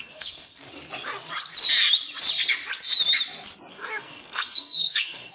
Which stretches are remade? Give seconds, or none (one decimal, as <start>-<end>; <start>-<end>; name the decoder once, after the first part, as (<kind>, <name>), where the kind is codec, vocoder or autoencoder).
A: 0.0-0.5 (codec, SNAC); 3.7-5.3